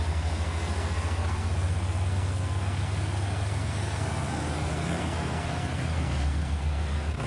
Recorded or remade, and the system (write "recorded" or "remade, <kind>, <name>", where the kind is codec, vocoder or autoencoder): remade, codec, SNAC